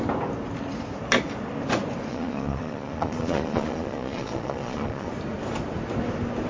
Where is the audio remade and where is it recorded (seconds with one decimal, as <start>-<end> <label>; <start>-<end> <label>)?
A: 0.0-2.1 recorded; 2.1-5.1 remade; 5.1-6.5 recorded